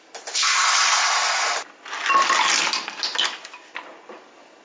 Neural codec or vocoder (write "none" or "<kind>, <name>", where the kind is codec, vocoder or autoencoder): none